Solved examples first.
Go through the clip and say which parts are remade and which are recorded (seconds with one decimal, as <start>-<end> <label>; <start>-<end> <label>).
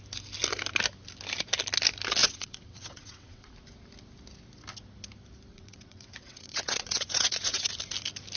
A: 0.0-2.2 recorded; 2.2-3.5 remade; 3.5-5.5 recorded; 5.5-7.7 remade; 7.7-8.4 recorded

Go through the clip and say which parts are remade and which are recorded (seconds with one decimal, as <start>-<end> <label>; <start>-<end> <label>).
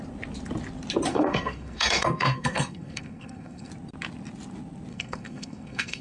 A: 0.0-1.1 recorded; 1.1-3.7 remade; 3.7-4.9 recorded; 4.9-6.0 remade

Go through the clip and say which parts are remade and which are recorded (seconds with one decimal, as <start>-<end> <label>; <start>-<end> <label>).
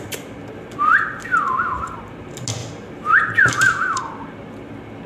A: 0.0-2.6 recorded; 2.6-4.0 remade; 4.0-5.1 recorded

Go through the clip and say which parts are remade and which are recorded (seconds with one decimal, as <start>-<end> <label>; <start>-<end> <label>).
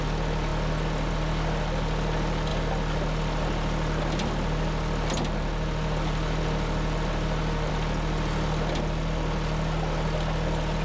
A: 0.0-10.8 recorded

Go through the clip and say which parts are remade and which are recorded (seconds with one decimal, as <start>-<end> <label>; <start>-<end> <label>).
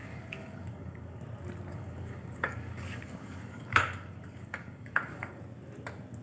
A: 0.0-1.2 remade; 1.2-1.7 recorded; 1.7-5.4 remade; 5.4-6.2 recorded